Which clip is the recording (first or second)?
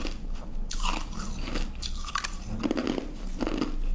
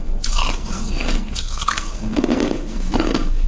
first